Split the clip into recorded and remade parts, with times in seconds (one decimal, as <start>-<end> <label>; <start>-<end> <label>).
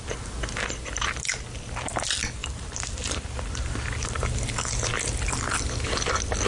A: 0.0-6.5 recorded